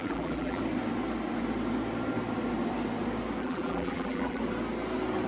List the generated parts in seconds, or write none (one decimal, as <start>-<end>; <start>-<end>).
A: 0.0-0.6; 3.4-4.4

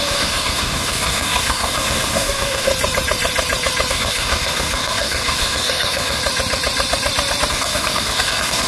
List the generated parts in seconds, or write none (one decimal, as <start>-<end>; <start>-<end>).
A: 0.0-2.7; 3.9-6.2; 7.5-8.7

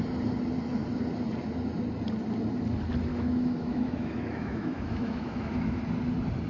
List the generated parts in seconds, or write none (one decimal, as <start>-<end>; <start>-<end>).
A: 3.1-5.8

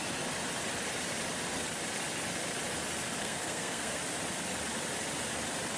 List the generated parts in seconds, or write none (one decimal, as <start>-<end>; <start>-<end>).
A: 3.2-4.0